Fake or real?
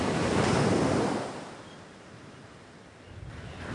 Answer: real